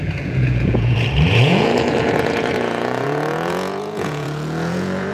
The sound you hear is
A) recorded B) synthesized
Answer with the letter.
B